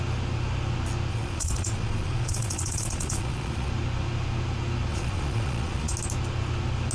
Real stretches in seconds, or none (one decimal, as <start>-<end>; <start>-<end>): 0.0-1.1; 3.7-4.9; 5.9-6.9

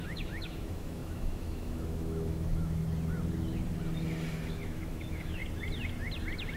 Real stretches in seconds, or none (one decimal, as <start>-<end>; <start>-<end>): 2.8-4.5; 5.4-6.6

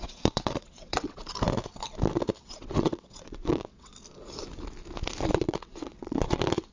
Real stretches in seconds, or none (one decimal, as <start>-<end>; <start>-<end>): 1.2-2.4; 3.9-5.2

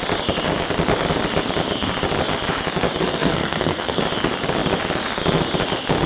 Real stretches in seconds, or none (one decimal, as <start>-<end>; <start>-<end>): 0.0-3.0; 4.0-6.1

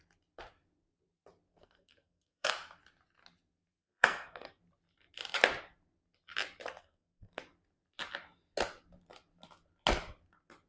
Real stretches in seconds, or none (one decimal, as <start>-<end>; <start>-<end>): 0.0-1.5; 2.5-3.8; 4.6-6.8; 7.4-10.7